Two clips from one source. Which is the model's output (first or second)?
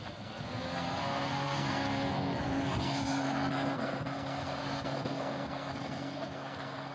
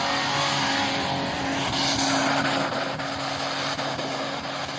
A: first